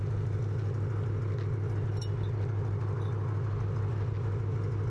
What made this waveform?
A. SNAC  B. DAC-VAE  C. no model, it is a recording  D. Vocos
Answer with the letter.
C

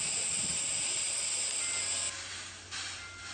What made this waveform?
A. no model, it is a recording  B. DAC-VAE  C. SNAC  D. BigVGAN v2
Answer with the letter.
A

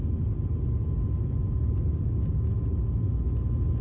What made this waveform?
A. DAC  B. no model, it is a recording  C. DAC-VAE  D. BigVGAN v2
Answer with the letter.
B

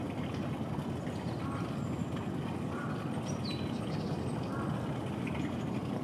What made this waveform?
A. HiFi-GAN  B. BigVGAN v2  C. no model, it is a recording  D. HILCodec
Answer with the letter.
C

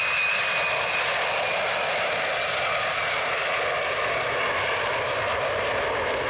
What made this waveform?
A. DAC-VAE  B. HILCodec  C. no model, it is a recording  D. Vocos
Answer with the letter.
C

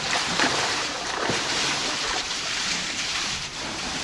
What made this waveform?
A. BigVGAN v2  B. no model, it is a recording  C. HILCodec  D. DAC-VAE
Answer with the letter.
A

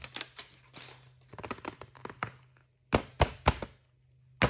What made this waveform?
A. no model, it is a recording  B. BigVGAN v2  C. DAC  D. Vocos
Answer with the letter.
A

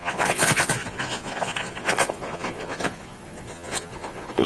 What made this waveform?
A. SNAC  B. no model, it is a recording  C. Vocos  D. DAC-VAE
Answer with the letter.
C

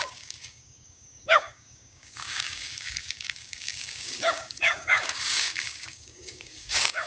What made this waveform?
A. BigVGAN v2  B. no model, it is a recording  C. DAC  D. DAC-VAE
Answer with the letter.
C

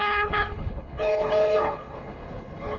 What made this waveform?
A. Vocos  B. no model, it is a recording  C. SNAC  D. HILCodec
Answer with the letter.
D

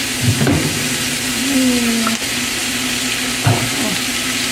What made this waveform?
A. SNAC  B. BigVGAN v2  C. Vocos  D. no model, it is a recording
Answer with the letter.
D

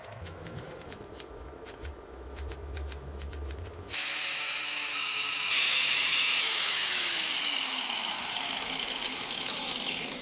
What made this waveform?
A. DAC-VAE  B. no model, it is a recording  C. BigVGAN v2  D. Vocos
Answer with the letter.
A